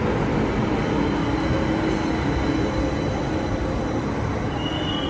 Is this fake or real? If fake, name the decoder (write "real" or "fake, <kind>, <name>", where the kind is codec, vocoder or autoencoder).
real